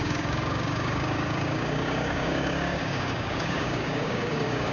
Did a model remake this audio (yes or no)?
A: yes